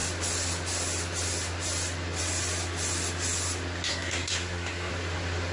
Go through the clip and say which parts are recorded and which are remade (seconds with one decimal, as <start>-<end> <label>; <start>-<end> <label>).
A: 0.0-3.9 recorded; 3.9-4.9 remade; 4.9-5.5 recorded